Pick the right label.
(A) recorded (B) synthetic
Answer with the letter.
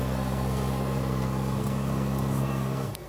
B